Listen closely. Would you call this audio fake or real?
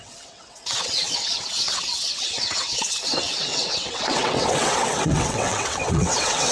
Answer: fake